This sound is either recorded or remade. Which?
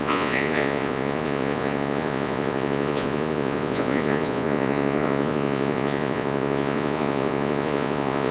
remade